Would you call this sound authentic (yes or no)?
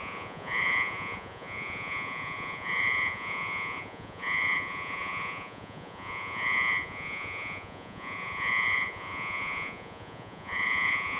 no